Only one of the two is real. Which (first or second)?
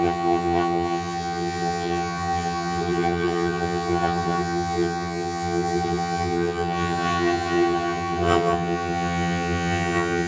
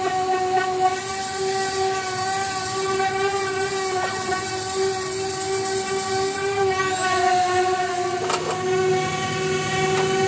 second